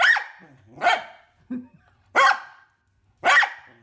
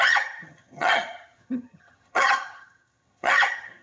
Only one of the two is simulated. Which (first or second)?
second